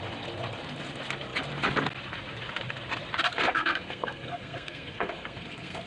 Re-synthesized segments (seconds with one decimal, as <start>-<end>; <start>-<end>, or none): 3.3-5.9